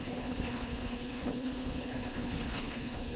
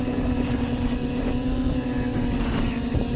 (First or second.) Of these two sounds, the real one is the second